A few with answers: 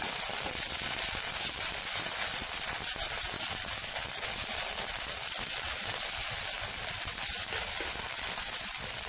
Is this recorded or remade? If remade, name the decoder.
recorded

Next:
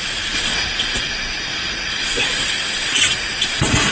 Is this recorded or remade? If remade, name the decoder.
remade, vocoder, Vocos